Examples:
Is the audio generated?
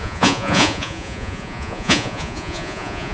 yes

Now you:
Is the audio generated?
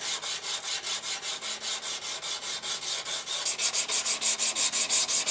no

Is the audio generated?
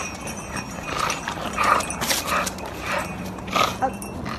no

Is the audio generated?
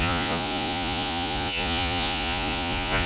yes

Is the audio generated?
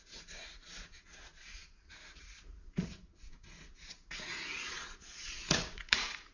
yes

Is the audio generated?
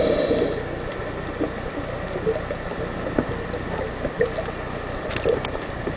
no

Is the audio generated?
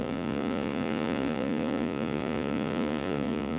yes